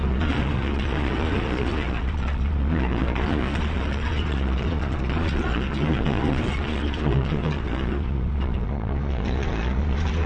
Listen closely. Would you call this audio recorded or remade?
remade